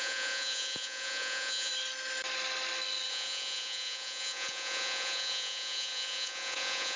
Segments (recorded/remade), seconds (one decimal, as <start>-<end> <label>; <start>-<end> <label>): 0.0-1.7 remade; 1.7-3.1 recorded; 3.1-7.0 remade